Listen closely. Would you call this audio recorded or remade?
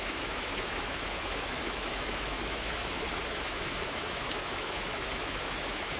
remade